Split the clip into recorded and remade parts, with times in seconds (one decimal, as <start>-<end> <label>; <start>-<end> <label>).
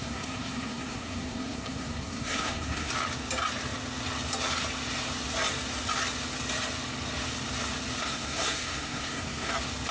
0.0-2.9 remade; 2.9-8.0 recorded; 8.0-9.5 remade; 9.5-9.9 recorded